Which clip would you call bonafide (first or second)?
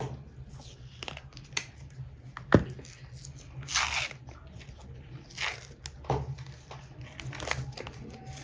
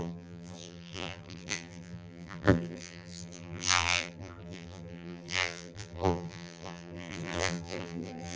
first